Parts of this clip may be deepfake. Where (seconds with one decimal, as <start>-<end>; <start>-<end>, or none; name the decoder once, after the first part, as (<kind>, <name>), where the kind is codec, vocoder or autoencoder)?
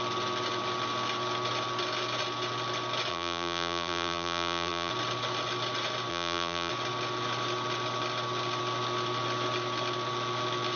3.1-4.9 (vocoder, BigVGAN v2); 6.1-6.7